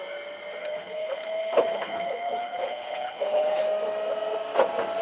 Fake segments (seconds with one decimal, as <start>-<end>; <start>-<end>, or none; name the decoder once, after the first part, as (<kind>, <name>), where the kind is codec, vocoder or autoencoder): 0.6-3.6 (codec, HILCodec)